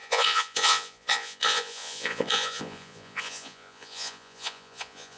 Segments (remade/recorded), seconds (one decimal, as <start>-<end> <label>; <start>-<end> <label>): 0.0-5.2 remade